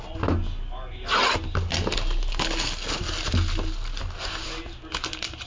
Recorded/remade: recorded